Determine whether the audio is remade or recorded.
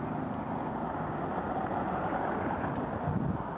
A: recorded